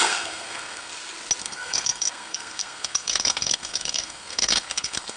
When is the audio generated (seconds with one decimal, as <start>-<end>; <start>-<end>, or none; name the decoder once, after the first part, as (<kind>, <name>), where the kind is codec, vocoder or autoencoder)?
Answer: 0.0-0.9 (codec, SNAC); 1.4-5.2